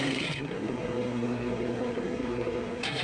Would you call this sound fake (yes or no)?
yes